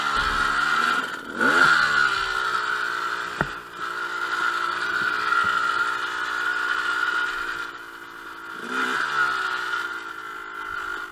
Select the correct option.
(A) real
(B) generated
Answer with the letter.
A